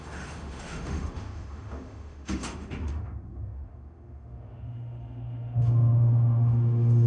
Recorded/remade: remade